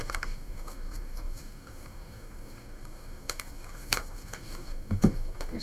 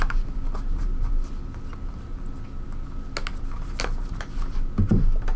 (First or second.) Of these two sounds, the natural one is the second